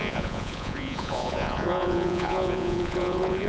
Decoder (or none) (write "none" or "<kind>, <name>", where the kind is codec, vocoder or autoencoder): vocoder, Vocos